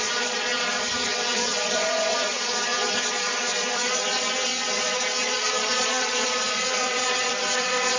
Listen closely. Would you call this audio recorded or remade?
remade